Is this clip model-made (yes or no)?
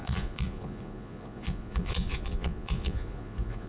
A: yes